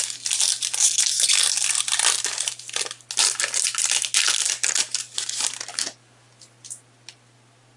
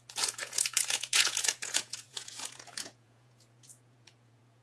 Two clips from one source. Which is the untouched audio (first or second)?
first